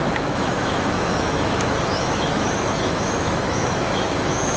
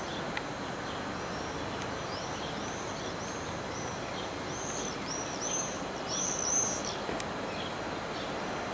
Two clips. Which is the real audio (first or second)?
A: second